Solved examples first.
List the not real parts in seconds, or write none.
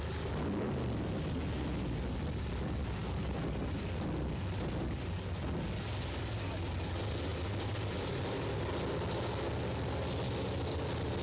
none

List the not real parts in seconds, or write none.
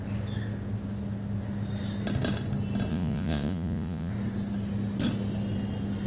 2.9-4.1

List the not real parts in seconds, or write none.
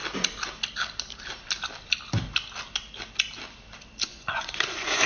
4.1-5.1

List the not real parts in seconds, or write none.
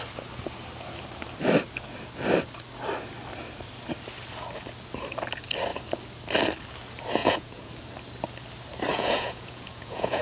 7.2-7.7; 8.9-10.2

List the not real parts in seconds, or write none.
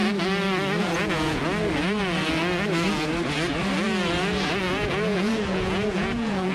0.8-1.4; 4.6-6.5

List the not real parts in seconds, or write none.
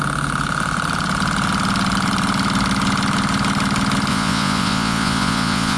4.1-5.8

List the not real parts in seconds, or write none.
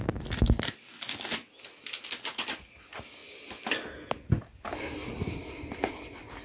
none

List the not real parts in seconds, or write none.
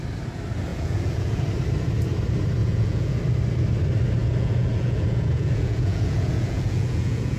0.7-1.4; 2.6-3.2; 4.2-7.4